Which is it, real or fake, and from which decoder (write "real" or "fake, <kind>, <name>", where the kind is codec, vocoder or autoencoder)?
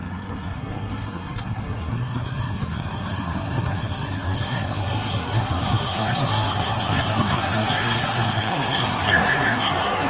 fake, codec, SNAC